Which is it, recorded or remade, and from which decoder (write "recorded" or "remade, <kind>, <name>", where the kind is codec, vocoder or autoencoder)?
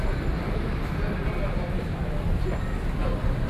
recorded